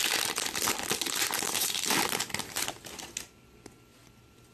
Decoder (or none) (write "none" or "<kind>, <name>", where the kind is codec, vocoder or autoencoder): none